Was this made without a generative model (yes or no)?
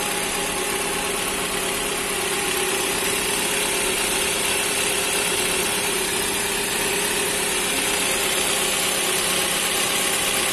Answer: yes